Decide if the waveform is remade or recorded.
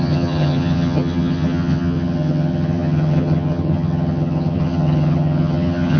remade